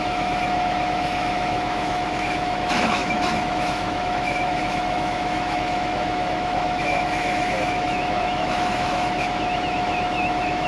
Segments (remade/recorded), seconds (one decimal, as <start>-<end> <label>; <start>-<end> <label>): 0.0-10.7 remade